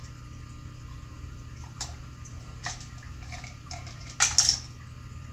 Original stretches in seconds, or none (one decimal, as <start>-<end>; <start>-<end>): 0.0-1.1; 4.2-5.3